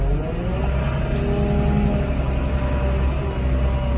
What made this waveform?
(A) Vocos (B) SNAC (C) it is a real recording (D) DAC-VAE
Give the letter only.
C